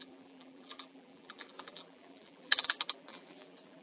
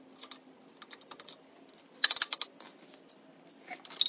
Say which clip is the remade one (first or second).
first